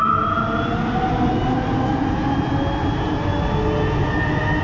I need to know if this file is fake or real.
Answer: real